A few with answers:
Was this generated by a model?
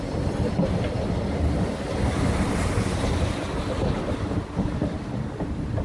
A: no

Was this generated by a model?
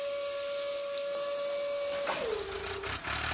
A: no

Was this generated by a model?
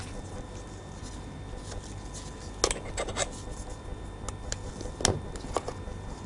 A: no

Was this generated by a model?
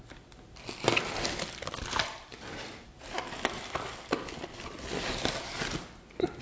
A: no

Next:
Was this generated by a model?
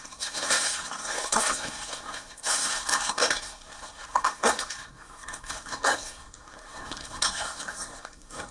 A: yes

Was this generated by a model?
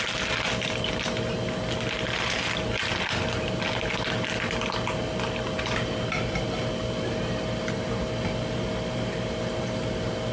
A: no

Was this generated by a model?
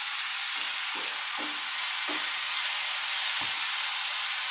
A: no